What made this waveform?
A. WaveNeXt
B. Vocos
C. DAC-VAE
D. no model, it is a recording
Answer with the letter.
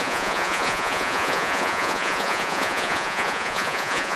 B